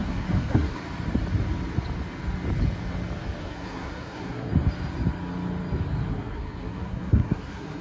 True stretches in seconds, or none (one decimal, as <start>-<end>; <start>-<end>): 0.8-3.4; 4.5-6.1